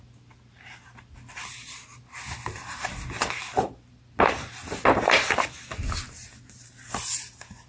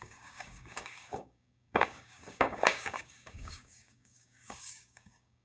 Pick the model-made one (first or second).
second